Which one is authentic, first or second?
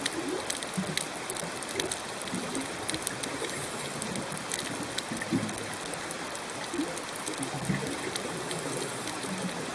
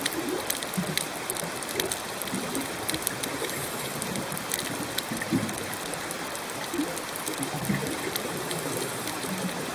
first